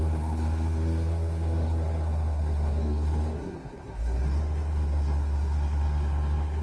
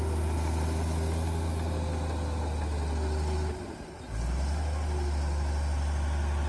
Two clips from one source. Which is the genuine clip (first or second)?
second